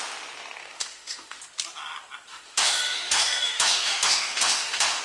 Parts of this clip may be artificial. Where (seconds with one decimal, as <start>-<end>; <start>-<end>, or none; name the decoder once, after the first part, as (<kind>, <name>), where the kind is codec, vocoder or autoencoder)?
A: 0.6-1.4 (autoencoder, DAC-VAE); 2.3-5.0